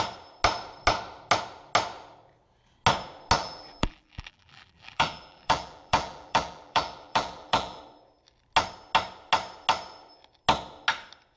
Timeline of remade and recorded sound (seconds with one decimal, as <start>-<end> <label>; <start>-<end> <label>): 0.0-3.4 recorded; 3.4-7.8 remade; 7.8-11.4 recorded